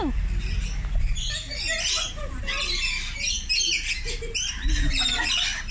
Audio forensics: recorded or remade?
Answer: recorded